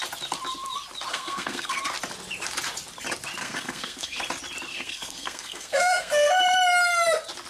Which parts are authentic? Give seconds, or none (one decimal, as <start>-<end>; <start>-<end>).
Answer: 0.0-1.1; 1.8-3.4; 4.2-4.7; 6.3-7.5